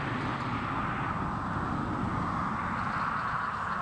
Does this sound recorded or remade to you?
recorded